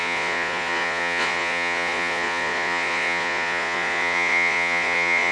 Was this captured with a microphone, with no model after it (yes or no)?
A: no